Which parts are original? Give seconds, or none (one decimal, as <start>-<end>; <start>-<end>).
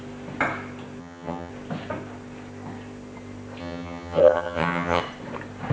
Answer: 0.0-1.0; 1.5-3.6; 5.0-5.7